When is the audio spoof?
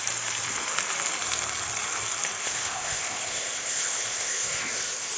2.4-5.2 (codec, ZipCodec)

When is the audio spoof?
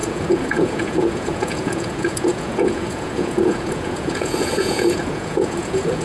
0.0-6.0 (vocoder, Vocos)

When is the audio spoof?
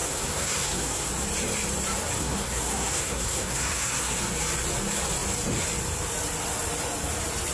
0.0-1.1 (codec, SNAC); 2.2-4.2